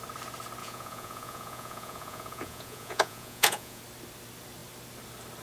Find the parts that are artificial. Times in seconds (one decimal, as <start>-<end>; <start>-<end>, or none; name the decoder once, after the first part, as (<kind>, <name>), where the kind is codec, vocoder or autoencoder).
0.6-3.8 (vocoder, Vocos)

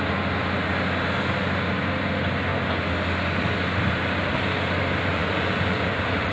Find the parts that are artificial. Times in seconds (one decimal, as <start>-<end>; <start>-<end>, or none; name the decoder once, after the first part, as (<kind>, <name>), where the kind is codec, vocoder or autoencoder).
5.1-6.3 (vocoder, Vocos)

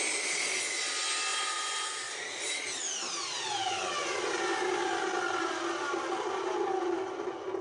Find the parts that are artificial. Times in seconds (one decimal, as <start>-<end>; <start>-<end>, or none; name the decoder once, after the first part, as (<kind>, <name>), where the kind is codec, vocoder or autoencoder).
1.3-1.9 (vocoder, Vocos)

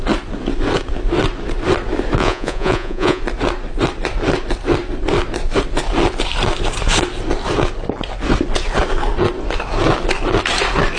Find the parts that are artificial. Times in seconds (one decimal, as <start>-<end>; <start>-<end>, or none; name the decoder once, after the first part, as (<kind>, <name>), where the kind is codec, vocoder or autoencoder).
2.2-3.2 (vocoder, Vocos)

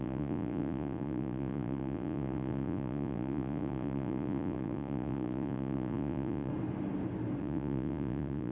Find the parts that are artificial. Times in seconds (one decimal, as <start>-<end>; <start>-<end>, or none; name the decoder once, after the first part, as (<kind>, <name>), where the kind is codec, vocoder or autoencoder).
0.0-6.5 (vocoder, Vocos); 7.4-8.5

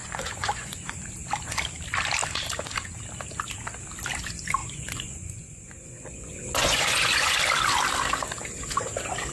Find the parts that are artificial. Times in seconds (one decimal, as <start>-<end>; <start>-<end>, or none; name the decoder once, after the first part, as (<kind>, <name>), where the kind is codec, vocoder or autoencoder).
0.0-1.1 (vocoder, Vocos); 4.6-7.4

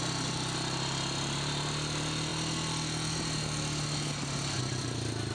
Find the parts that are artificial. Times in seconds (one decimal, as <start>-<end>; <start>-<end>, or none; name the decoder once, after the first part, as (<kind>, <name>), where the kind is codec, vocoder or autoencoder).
none